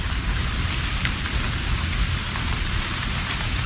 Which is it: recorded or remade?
remade